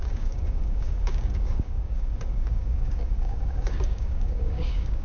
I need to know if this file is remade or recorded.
remade